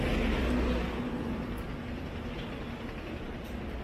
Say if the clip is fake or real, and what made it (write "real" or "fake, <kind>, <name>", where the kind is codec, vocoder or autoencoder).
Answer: real